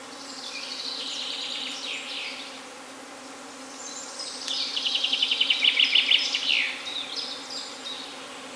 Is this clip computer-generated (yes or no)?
no